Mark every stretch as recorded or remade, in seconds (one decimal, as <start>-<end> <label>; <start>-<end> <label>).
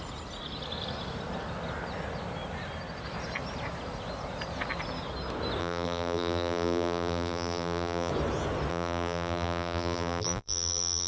0.0-5.6 recorded; 5.6-8.1 remade; 8.1-8.7 recorded; 8.7-11.1 remade